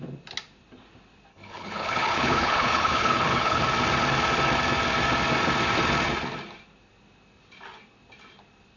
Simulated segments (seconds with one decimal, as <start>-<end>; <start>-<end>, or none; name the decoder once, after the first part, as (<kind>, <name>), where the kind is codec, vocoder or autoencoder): 1.3-3.6 (codec, HILCodec)